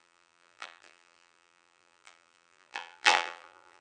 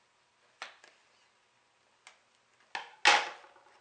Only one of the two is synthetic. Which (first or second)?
first